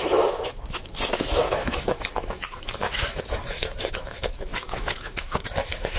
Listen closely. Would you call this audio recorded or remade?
remade